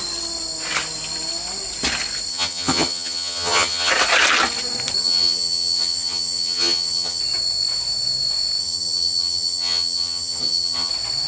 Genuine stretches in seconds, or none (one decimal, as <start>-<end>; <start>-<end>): 0.0-2.3; 3.9-5.0; 7.2-8.6; 10.9-11.3